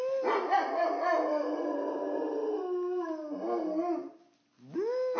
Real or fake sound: real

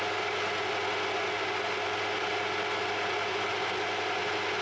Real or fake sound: real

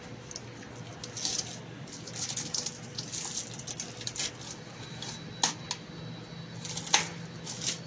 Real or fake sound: real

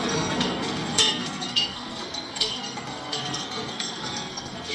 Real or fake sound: fake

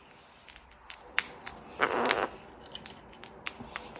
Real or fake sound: real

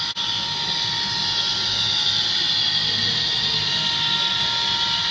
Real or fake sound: real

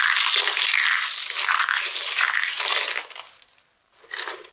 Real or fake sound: real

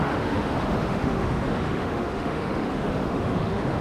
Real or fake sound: fake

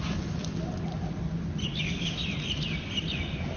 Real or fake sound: real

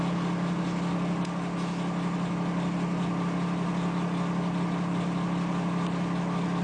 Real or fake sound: real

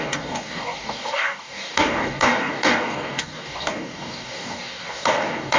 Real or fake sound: fake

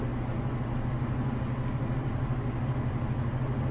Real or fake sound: real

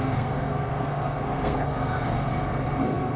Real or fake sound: fake